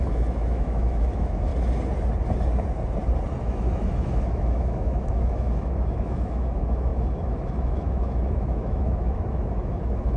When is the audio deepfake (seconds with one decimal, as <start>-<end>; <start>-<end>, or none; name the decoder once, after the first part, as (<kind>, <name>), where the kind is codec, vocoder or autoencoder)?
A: 0.0-1.5 (autoencoder, DAC-VAE); 3.4-10.2